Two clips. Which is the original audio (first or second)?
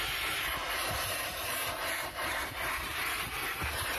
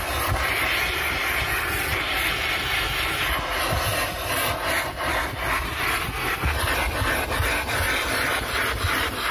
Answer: second